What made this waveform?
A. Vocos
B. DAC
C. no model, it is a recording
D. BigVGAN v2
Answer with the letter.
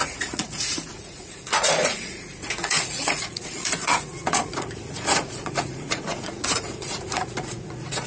A